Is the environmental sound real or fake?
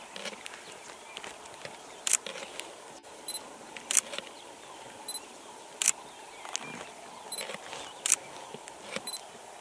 real